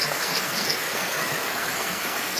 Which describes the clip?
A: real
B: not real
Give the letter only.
B